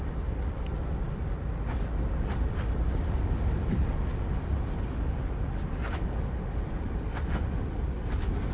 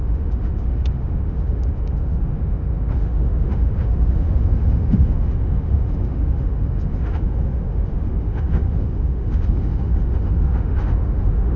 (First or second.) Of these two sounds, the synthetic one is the second